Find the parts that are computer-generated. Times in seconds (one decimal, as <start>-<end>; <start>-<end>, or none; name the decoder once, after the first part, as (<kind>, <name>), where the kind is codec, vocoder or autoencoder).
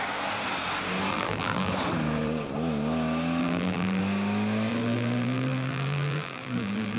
1.1-1.7 (vocoder, BigVGAN v2); 3.4-4.0; 4.7-7.0